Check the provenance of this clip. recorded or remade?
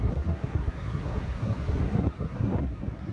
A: remade